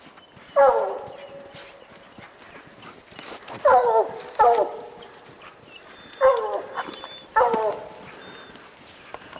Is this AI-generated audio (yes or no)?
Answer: no